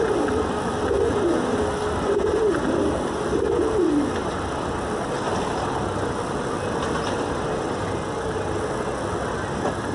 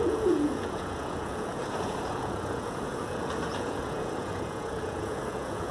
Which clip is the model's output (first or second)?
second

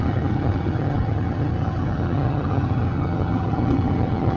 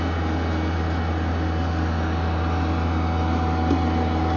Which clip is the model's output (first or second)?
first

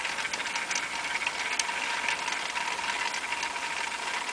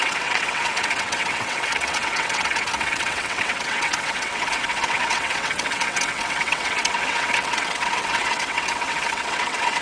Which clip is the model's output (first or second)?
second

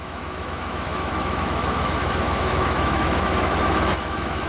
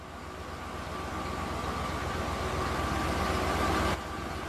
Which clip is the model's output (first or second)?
first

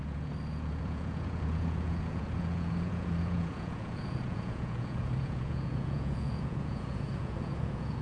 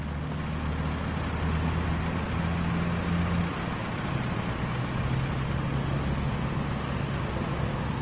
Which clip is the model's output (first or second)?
first